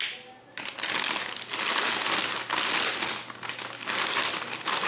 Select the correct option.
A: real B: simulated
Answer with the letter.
A